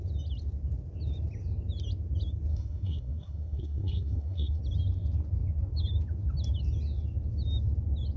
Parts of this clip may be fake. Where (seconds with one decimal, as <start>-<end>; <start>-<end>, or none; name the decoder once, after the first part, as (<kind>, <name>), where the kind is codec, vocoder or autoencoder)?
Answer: 2.5-4.6 (codec, SNAC)